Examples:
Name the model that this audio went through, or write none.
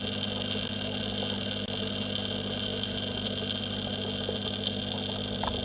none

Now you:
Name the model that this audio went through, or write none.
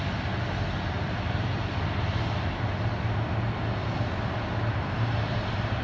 none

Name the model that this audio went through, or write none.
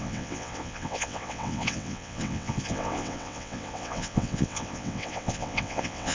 vocoder, WaveNeXt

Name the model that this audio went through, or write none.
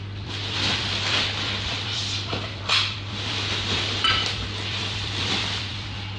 vocoder, BigVGAN v2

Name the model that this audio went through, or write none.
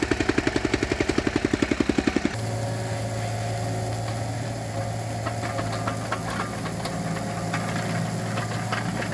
none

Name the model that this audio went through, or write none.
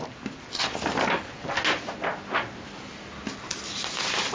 none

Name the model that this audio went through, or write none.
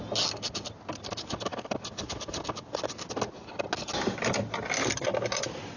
none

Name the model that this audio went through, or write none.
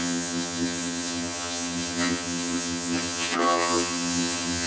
vocoder, HiFi-GAN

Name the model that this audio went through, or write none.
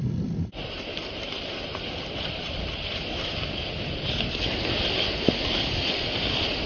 none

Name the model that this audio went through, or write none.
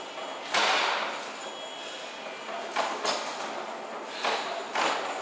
none